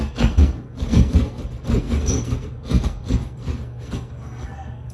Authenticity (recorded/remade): remade